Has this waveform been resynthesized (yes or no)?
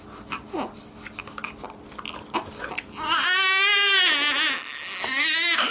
no